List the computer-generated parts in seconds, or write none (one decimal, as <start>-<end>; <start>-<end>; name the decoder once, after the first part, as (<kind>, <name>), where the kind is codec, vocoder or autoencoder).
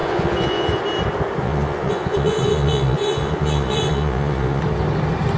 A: 0.0-0.8 (vocoder, Vocos); 1.4-4.6